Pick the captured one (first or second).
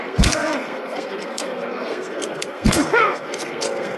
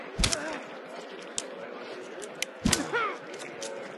second